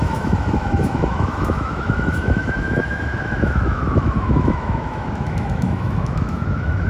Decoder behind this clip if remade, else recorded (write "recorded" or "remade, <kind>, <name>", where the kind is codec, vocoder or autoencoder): remade, autoencoder, DAC-VAE